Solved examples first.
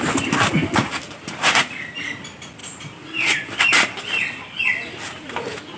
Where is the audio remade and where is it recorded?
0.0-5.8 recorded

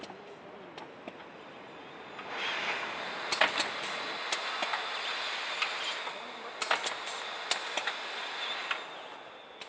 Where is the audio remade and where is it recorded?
0.0-9.7 recorded

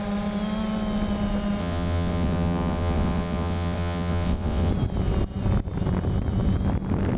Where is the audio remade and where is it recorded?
0.0-1.6 recorded; 1.6-4.7 remade; 4.7-7.2 recorded

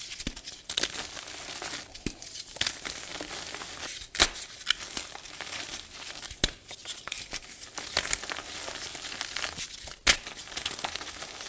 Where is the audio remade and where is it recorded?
0.0-11.5 recorded

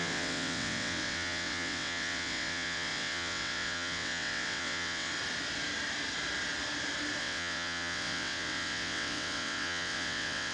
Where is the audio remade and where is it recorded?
0.0-5.1 remade; 5.1-7.2 recorded; 7.2-10.5 remade

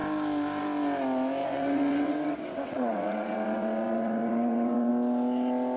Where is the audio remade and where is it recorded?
0.0-1.4 recorded; 1.4-4.9 remade; 4.9-5.8 recorded

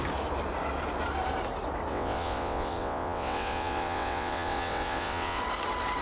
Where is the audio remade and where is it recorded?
0.0-1.9 recorded; 1.9-5.4 remade; 5.4-6.0 recorded